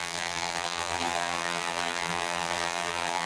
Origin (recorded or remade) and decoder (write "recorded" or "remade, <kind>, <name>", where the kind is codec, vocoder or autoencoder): remade, vocoder, BigVGAN v2